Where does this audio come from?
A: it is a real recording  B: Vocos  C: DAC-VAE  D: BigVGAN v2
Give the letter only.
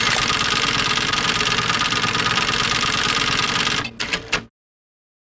A